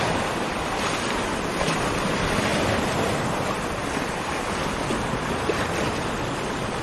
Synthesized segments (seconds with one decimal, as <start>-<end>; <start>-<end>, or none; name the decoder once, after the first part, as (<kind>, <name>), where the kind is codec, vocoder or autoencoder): none